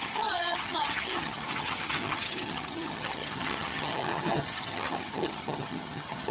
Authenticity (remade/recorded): remade